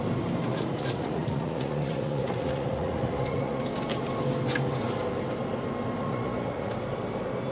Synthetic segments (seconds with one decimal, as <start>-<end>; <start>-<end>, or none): 0.5-3.6; 6.0-6.7